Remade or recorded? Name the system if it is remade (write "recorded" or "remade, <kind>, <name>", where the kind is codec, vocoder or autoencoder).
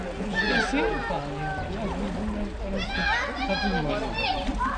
recorded